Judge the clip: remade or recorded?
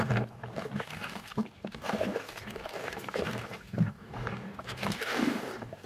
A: remade